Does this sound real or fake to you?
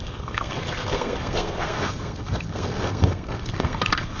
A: fake